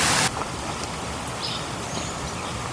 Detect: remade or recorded recorded